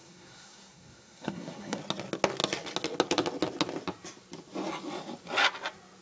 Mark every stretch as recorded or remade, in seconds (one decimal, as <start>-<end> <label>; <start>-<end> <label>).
0.0-1.8 remade; 1.8-6.0 recorded